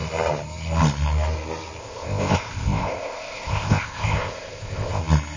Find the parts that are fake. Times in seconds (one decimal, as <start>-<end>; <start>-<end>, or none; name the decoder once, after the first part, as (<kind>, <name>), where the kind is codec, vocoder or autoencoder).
1.8-5.0 (codec, ZipCodec)